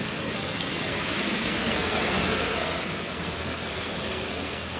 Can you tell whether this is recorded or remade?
remade